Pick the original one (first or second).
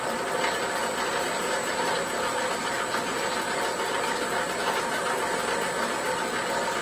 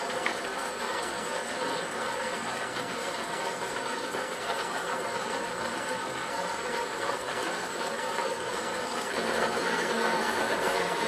first